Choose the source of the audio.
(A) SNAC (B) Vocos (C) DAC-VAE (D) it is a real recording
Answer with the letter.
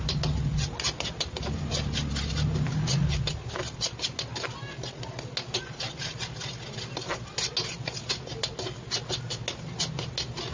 D